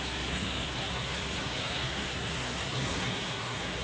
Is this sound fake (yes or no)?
yes